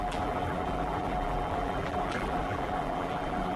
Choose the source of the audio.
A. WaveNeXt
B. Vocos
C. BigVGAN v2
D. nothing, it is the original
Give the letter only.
C